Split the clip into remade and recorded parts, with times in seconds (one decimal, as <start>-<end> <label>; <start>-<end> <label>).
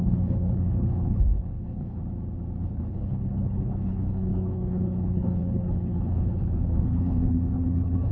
0.0-2.0 remade; 2.0-2.6 recorded; 2.6-8.1 remade